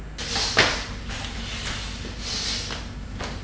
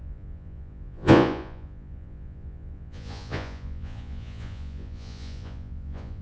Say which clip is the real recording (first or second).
first